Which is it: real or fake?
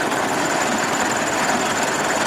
real